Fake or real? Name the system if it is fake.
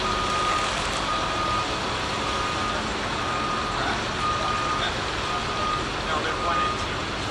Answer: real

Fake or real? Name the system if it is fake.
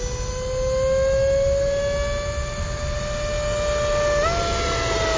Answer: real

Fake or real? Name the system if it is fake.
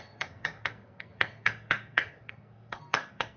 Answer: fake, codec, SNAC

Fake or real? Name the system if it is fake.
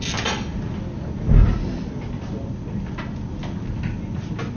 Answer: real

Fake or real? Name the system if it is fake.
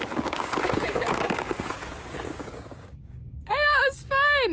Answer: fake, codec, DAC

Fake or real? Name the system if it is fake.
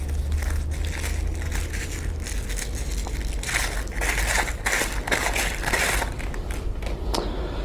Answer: real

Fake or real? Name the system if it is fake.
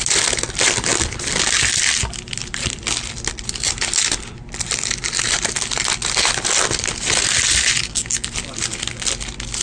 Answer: real